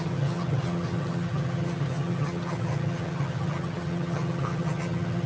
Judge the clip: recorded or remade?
remade